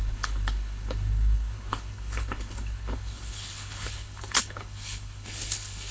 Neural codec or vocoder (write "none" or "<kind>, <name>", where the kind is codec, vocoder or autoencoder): codec, HILCodec